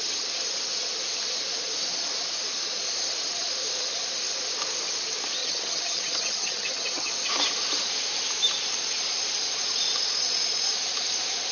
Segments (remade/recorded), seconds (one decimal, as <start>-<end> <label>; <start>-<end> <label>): 0.0-5.4 recorded; 5.4-7.1 remade; 7.1-11.5 recorded

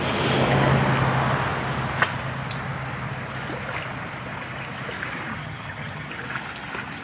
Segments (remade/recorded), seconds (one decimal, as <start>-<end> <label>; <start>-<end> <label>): 0.0-5.3 recorded; 5.3-6.1 remade; 6.1-7.0 recorded

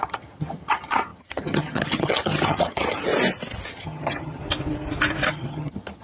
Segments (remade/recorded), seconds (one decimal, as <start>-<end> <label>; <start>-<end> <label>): 0.0-3.1 remade; 3.1-3.7 recorded; 3.7-4.4 remade; 4.4-5.3 recorded; 5.3-6.0 remade

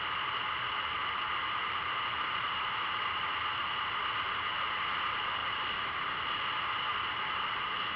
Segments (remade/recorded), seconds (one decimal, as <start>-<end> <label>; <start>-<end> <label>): 0.0-8.0 recorded